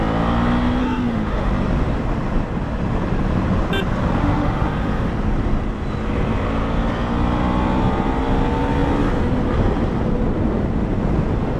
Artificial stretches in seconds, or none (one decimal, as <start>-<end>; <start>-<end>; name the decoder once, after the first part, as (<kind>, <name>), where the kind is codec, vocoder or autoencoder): 0.8-1.5 (autoencoder, DAC-VAE); 4.2-5.1